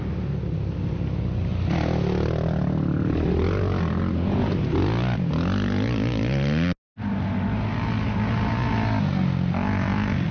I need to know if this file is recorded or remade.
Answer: recorded